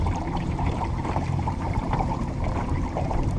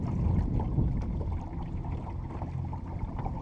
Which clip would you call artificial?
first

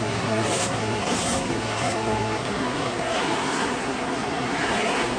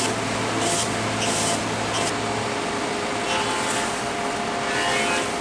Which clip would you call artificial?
first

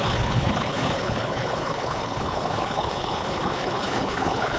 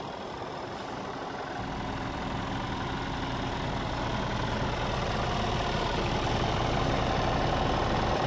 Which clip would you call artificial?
first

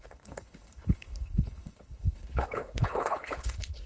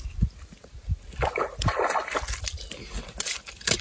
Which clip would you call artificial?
first